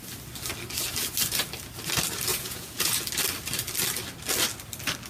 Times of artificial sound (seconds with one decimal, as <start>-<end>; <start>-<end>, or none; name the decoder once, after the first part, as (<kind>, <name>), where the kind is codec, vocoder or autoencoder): 2.3-3.0 (vocoder, Vocos)